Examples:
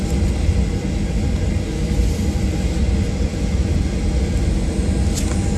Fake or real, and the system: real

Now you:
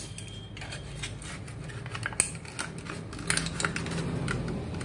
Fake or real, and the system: real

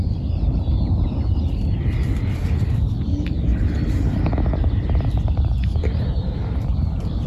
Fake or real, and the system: real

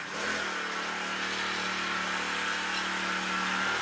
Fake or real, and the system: real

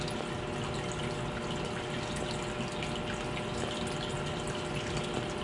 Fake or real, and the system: real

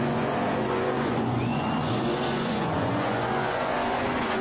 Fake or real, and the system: fake, vocoder, Vocos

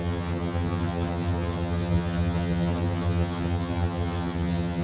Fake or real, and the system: fake, vocoder, HiFi-GAN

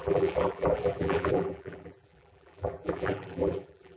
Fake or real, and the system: fake, vocoder, BigVGAN v2